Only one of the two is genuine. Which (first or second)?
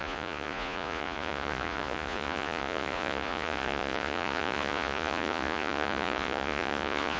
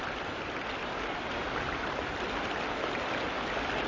second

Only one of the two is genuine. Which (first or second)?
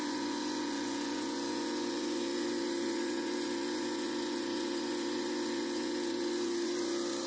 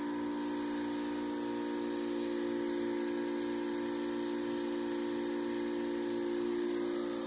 second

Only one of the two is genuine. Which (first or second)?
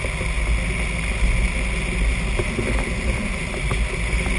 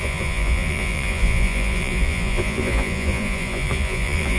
first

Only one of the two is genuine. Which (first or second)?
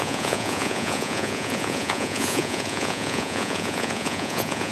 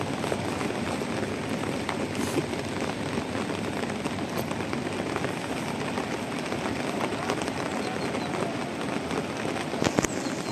second